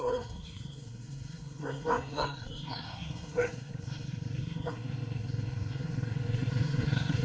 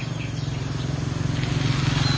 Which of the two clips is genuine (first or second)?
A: second